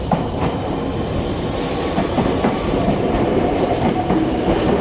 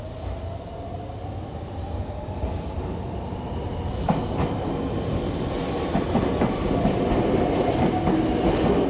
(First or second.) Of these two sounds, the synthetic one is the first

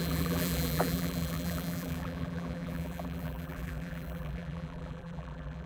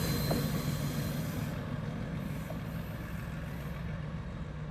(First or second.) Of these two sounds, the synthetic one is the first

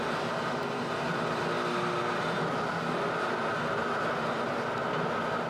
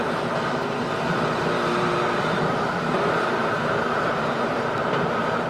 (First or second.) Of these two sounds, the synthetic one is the second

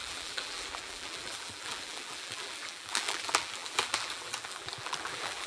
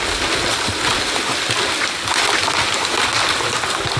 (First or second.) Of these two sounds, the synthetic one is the first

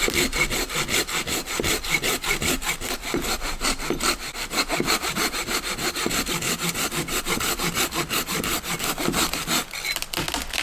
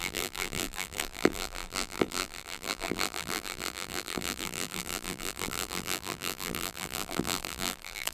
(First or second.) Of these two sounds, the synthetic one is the second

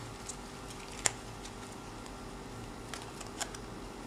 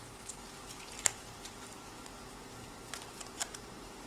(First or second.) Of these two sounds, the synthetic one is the second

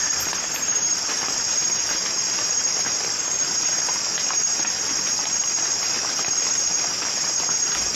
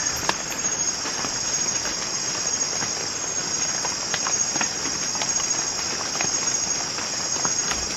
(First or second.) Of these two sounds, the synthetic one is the first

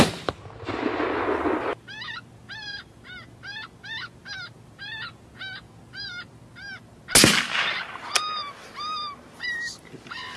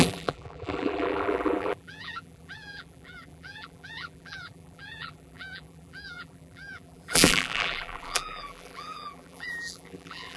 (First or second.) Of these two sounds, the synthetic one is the second